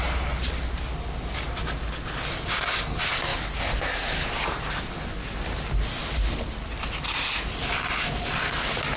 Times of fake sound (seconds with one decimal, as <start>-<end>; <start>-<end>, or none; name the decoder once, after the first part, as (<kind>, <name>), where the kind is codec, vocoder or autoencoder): 3.3-4.7 (vocoder, BigVGAN v2)